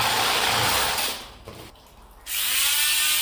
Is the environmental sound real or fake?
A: real